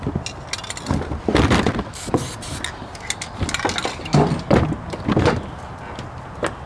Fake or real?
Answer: real